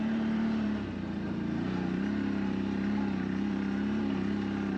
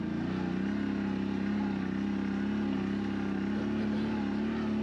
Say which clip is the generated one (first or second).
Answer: first